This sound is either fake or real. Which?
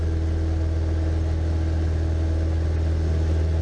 real